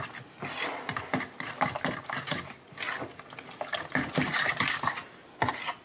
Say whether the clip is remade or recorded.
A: recorded